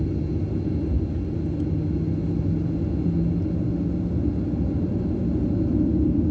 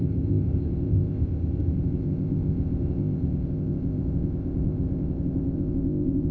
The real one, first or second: first